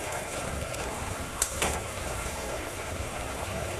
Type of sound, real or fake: fake